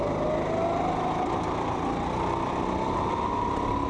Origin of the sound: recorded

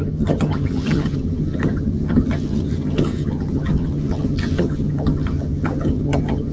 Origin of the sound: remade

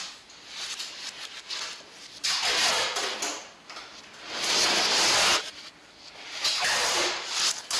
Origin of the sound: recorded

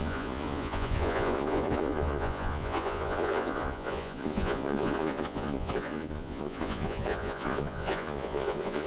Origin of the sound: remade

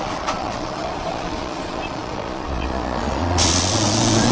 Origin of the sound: remade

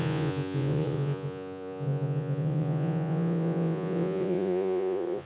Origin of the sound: remade